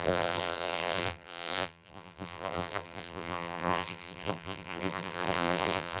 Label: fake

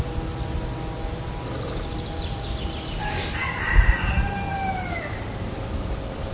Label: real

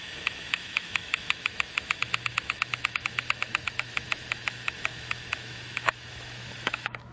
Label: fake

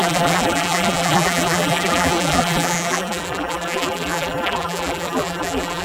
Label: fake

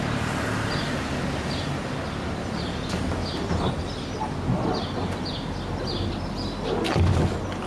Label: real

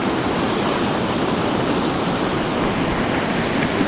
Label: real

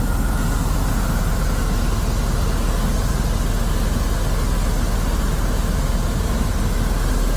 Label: real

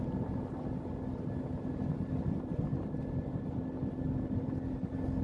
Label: real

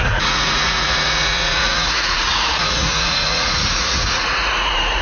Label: fake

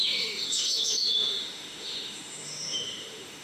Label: fake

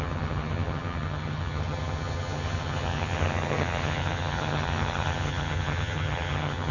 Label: fake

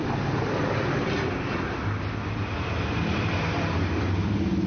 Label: real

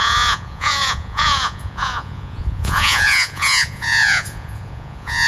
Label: fake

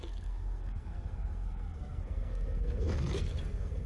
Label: fake